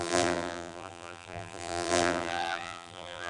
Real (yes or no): no